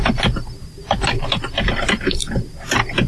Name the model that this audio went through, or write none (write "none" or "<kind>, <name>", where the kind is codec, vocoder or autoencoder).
none